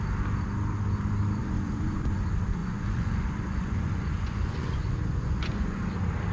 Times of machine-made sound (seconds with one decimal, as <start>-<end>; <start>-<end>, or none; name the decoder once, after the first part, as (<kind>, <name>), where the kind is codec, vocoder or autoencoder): 1.4-2.2 (vocoder, Vocos); 2.6-5.8